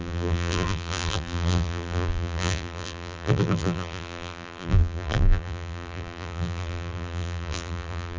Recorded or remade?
remade